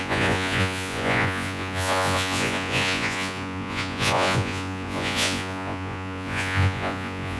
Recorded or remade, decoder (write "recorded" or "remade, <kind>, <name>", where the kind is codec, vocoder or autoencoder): remade, vocoder, Vocos